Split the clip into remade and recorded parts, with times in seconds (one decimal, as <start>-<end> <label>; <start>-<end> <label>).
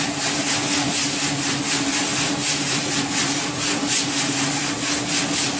0.0-5.6 recorded